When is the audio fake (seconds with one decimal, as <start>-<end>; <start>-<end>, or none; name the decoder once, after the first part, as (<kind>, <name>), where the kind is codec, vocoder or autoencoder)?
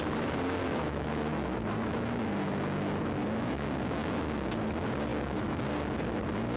0.6-4.6 (autoencoder, DAC-VAE); 5.1-5.7